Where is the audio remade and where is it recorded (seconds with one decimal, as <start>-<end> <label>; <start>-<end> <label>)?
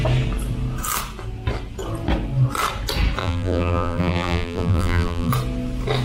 0.0-3.2 recorded; 3.2-5.3 remade; 5.3-6.0 recorded